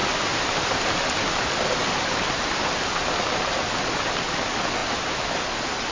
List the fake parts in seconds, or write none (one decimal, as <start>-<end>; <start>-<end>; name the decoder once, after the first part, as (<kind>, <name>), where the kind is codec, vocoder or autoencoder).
none